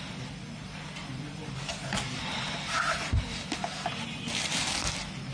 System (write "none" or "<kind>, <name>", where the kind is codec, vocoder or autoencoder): none